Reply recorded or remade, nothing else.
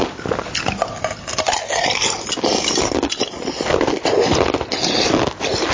recorded